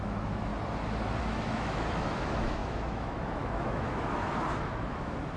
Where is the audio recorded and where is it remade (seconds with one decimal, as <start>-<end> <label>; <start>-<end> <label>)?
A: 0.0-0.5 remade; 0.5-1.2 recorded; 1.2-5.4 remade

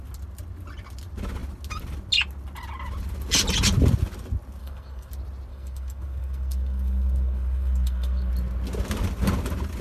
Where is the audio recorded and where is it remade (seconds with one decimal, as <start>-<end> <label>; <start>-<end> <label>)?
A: 0.0-4.6 recorded; 4.6-5.1 remade; 5.1-5.5 recorded; 5.5-8.3 remade; 8.3-9.8 recorded

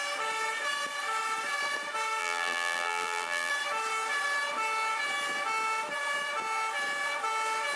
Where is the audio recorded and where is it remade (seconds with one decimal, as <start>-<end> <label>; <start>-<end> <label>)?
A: 0.0-2.2 recorded; 2.2-3.5 remade; 3.5-7.8 recorded